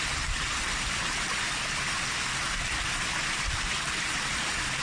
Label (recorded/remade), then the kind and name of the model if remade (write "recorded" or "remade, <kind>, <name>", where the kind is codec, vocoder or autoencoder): recorded